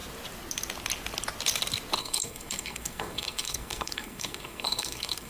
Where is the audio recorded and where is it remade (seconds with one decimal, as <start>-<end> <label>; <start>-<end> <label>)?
0.0-2.0 recorded; 2.0-5.3 remade